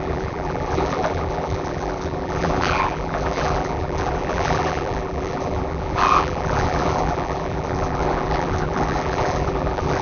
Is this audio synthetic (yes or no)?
yes